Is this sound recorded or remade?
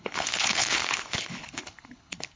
remade